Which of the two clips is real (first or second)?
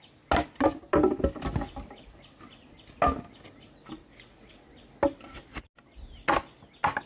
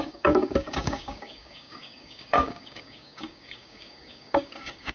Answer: first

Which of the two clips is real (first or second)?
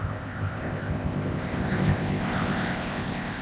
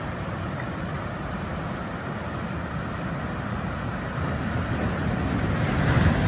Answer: second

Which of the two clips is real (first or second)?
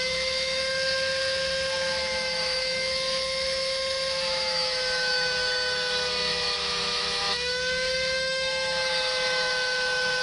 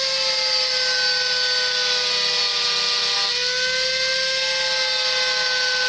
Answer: second